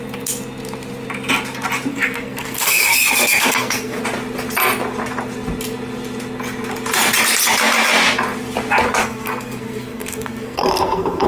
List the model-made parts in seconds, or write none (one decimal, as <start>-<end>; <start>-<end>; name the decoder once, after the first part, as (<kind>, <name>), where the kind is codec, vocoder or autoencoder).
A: 1.9-4.0 (codec, SNAC); 9.0-11.3